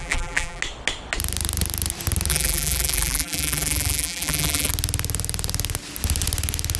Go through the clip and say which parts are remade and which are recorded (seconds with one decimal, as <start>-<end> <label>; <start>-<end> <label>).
0.0-0.6 remade; 0.6-2.3 recorded; 2.3-4.7 remade; 4.7-6.8 recorded